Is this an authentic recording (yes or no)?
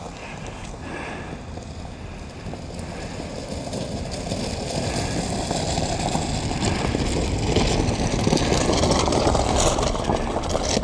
yes